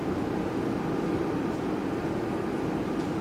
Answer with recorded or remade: recorded